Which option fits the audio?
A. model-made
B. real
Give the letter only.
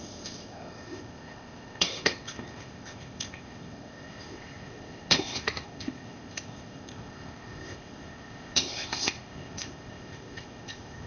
A